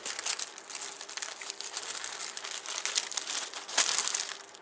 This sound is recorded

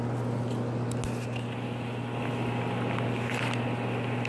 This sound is recorded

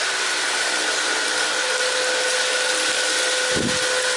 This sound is recorded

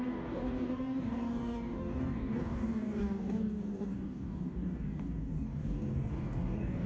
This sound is remade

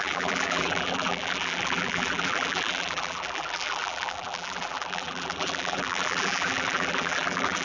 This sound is remade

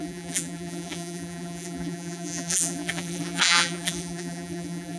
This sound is remade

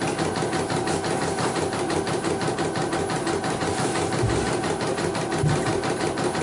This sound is recorded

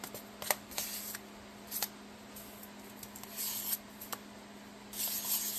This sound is recorded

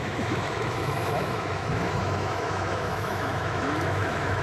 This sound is remade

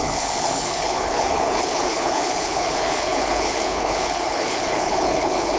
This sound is remade